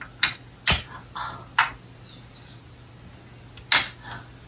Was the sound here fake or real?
real